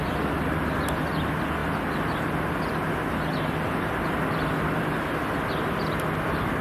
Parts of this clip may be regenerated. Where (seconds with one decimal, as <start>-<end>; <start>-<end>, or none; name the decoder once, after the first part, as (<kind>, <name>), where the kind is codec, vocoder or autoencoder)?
none